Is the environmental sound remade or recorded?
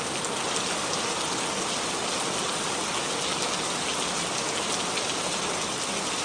recorded